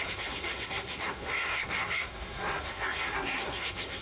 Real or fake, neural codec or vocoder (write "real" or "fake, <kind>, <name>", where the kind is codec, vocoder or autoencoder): fake, codec, SNAC